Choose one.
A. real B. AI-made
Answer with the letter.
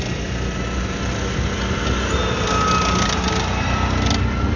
A